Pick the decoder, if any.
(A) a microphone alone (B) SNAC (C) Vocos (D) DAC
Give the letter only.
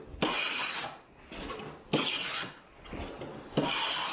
A